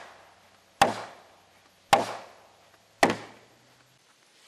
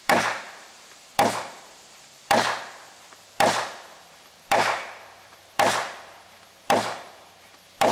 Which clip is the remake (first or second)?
second